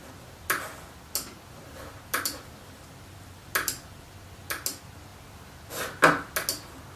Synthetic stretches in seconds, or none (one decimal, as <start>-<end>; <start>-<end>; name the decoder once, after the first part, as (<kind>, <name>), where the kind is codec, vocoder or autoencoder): none